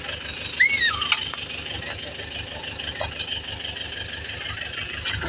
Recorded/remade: recorded